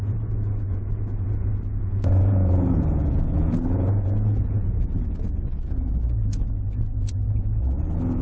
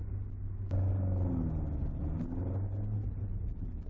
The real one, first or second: second